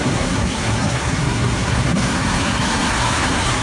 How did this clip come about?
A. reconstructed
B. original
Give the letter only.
A